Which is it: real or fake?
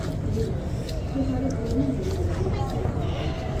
real